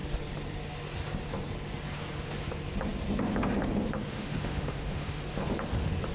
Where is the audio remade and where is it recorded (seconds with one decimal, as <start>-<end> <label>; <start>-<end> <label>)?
0.0-4.1 recorded; 4.1-5.2 remade; 5.2-6.1 recorded